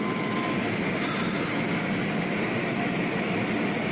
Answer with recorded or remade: recorded